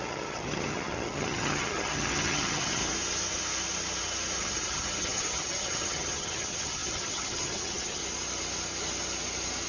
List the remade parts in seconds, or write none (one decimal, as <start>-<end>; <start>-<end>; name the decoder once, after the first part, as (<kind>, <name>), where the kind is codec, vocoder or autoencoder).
0.0-2.8 (vocoder, HiFi-GAN); 4.4-8.0